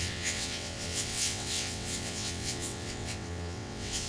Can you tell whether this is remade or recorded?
remade